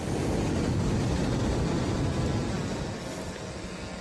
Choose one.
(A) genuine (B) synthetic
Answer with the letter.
A